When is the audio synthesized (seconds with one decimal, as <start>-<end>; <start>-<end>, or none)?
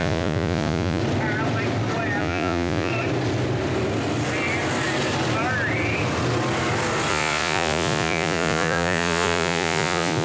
0.0-1.0; 2.2-2.9; 7.1-10.2